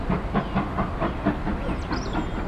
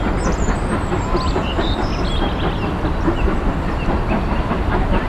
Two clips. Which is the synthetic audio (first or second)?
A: second